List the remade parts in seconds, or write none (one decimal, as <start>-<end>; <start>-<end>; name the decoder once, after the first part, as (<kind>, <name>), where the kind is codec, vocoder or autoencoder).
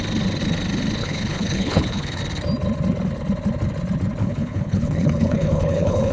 1.0-2.2 (codec, HILCodec); 4.2-6.1